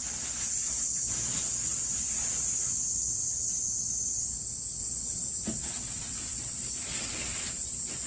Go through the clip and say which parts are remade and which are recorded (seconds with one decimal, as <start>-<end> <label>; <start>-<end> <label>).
0.0-4.8 recorded; 4.8-5.3 remade; 5.3-8.1 recorded